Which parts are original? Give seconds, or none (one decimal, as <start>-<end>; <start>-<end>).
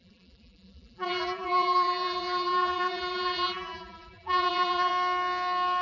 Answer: 4.9-5.8